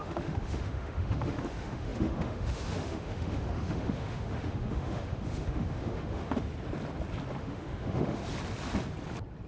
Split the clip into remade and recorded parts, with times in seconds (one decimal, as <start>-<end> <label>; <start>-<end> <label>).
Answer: 0.0-6.5 remade; 6.5-7.4 recorded; 7.4-8.2 remade; 8.2-9.5 recorded